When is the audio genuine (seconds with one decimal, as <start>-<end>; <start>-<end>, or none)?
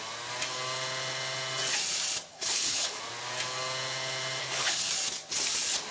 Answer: 0.0-2.3; 3.0-4.4; 4.9-5.9